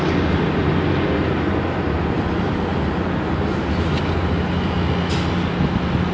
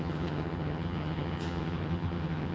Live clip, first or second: first